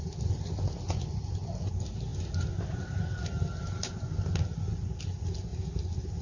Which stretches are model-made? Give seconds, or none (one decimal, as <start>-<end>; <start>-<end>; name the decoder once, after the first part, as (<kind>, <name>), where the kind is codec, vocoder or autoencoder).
none